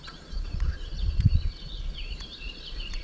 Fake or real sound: fake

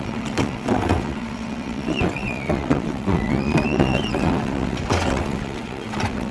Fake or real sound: fake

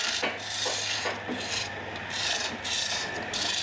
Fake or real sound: fake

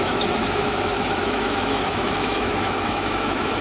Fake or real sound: fake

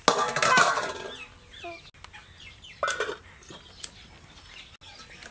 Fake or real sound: real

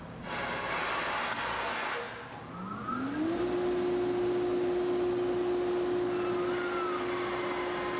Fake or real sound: real